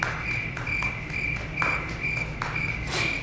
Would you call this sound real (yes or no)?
yes